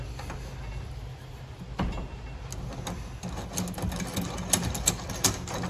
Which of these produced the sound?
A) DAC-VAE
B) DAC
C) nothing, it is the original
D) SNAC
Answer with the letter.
C